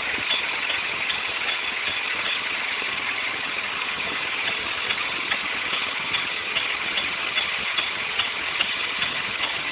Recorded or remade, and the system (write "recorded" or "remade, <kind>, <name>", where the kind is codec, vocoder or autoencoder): remade, vocoder, HiFi-GAN